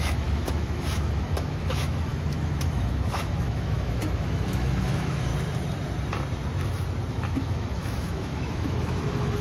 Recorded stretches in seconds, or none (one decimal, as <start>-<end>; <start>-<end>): 5.3-7.1